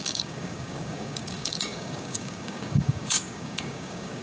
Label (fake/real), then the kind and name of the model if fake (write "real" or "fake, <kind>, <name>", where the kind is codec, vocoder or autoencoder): fake, codec, DAC